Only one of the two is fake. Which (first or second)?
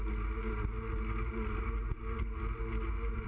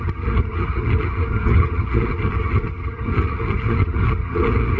second